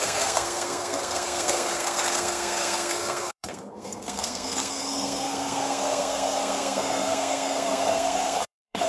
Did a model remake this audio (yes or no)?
yes